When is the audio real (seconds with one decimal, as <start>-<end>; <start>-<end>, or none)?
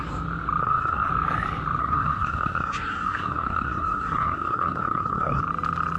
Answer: 0.0-0.6; 1.1-1.8; 5.4-6.0